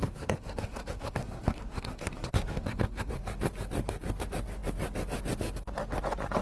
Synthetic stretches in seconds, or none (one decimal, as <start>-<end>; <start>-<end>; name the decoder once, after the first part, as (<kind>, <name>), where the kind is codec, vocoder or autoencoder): 0.0-3.1 (codec, SNAC)